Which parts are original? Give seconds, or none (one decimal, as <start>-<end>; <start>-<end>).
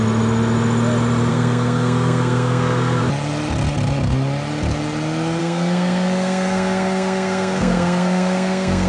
0.0-1.3; 3.0-5.4